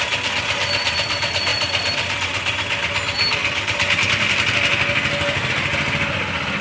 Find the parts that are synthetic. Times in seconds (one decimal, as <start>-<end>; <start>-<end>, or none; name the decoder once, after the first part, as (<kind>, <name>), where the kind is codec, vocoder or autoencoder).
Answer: none